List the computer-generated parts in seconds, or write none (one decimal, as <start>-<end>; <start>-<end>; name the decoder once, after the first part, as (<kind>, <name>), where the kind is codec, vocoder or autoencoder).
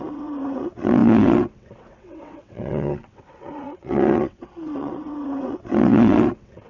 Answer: 0.0-6.7 (vocoder, WaveNeXt)